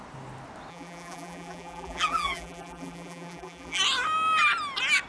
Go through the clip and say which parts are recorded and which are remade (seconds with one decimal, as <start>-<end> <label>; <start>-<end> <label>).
0.0-0.7 recorded; 0.7-3.8 remade; 3.8-5.1 recorded